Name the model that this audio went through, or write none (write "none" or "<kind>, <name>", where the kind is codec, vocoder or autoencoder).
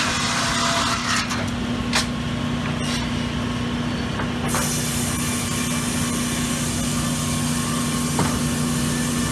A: none